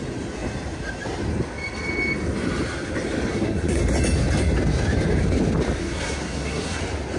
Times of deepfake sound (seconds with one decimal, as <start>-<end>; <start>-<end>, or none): 3.3-3.8; 5.8-6.8